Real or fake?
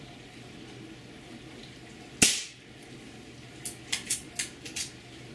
real